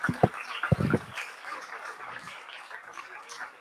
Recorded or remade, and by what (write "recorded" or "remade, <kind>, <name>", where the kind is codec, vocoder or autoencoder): remade, codec, DAC